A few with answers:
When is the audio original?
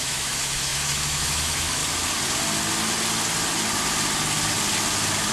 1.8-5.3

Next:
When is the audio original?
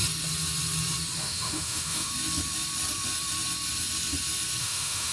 0.0-1.2; 2.1-4.6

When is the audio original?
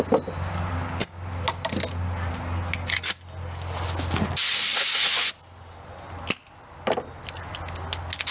0.0-8.3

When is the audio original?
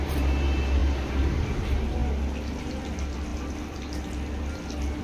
0.0-5.0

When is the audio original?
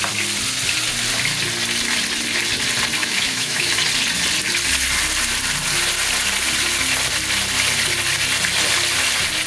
0.0-3.0; 3.7-9.5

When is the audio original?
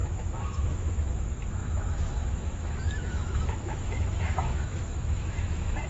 none